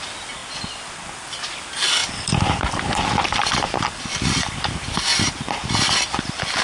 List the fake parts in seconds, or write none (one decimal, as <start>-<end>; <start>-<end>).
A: 0.0-0.4; 1.3-5.1; 5.7-6.6